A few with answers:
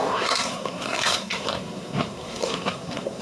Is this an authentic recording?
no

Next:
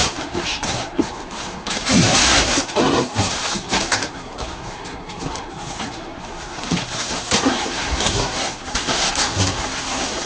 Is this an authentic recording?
no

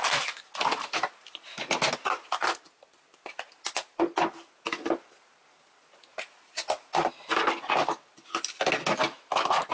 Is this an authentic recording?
yes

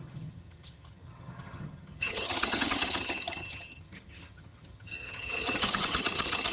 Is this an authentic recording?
no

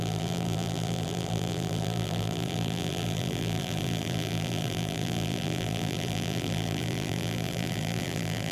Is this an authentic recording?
no